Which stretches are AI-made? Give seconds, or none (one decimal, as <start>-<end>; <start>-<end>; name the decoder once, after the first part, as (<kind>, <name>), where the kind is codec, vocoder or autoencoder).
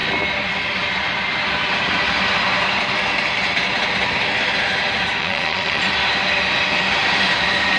5.2-5.8 (vocoder, Vocos)